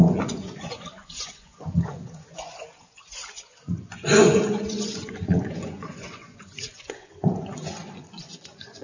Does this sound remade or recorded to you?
remade